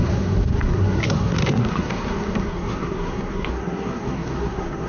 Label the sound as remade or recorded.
remade